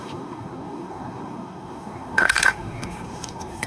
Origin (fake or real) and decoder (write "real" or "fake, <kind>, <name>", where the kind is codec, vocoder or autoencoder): fake, codec, SNAC